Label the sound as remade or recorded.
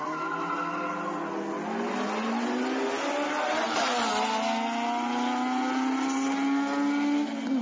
recorded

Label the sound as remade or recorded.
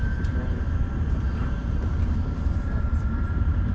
remade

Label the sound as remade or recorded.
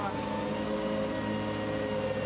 recorded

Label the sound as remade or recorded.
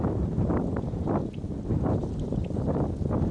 recorded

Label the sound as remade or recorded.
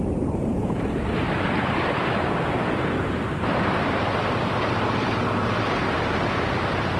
remade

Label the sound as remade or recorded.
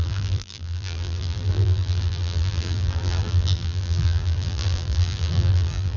remade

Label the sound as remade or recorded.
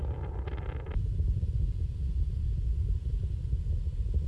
recorded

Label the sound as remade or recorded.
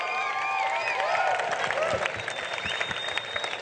recorded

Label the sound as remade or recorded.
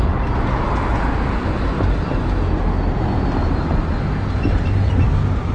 recorded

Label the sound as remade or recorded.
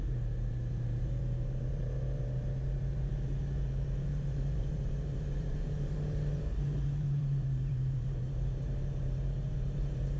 remade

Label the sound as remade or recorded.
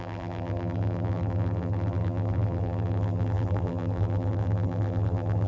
remade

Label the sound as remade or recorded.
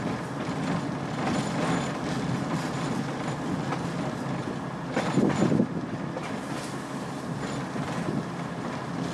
recorded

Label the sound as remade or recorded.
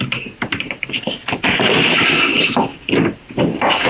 remade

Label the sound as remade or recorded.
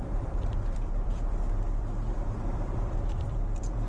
remade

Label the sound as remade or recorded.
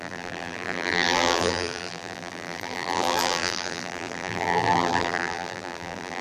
remade